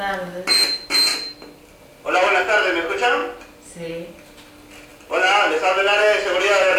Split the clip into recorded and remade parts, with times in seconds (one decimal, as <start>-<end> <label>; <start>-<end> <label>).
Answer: 0.0-6.8 recorded

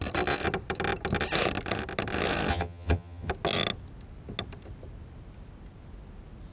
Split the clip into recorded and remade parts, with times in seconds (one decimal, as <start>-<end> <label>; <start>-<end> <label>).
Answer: 0.0-2.5 recorded; 2.5-3.3 remade; 3.3-6.5 recorded

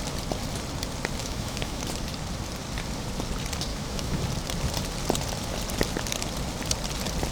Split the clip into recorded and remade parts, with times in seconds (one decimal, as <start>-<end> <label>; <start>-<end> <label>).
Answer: 0.0-1.2 recorded; 1.2-1.8 remade; 1.8-3.7 recorded; 3.7-4.2 remade; 4.2-7.3 recorded

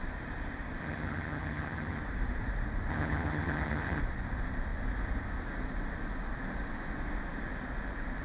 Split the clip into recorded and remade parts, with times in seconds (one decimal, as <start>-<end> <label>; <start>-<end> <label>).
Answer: 0.0-0.8 recorded; 0.8-2.0 remade; 2.0-2.9 recorded; 2.9-4.0 remade; 4.0-8.2 recorded

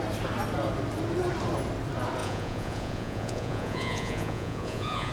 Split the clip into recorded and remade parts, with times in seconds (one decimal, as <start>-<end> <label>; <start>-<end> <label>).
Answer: 0.0-2.2 recorded; 2.2-5.1 remade